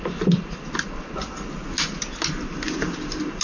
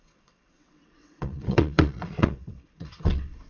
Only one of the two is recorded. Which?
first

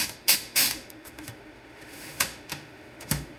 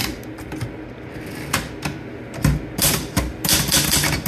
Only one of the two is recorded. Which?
second